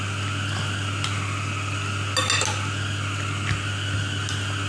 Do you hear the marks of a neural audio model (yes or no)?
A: no